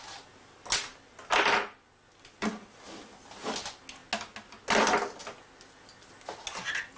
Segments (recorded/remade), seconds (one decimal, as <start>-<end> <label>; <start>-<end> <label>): 0.0-7.0 recorded